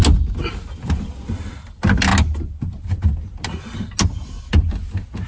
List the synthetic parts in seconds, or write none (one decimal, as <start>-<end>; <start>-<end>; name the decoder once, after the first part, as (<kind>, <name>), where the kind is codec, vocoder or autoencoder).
none